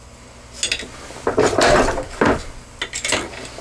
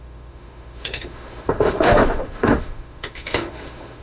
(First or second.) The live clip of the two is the first